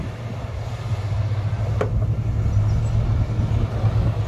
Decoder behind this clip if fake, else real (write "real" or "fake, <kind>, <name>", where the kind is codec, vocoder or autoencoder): real